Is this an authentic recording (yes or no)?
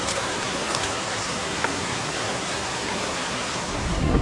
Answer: no